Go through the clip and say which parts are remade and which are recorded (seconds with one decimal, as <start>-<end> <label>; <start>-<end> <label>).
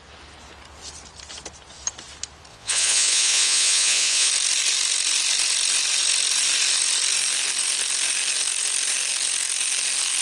0.0-2.5 recorded; 2.5-4.3 remade; 4.3-10.2 recorded